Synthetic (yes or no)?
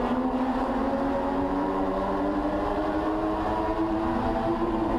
yes